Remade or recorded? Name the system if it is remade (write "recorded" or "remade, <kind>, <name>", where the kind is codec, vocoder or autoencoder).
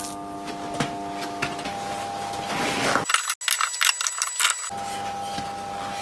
recorded